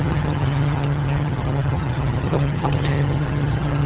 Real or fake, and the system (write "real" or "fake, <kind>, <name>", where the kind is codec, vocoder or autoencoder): fake, vocoder, HiFi-GAN